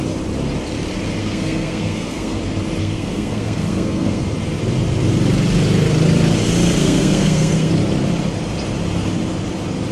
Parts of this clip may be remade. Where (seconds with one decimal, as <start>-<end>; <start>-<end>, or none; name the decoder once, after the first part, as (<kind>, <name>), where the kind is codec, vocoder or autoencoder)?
1.2-2.4 (codec, SNAC); 2.8-4.2; 6.8-7.7